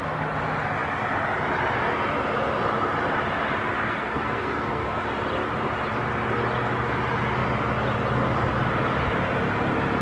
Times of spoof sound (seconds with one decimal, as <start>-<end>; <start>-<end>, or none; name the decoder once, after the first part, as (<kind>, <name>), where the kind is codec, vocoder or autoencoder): 3.8-5.0 (codec, SNAC)